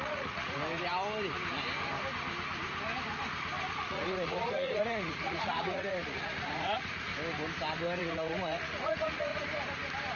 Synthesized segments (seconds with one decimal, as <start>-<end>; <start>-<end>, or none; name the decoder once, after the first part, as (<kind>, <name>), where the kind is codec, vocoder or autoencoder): 0.0-0.6 (vocoder, Vocos); 3.8-7.1; 8.0-9.3